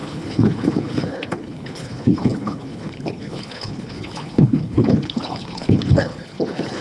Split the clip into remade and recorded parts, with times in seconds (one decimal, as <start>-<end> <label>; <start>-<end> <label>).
0.0-6.8 remade